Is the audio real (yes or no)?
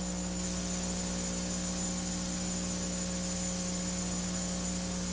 yes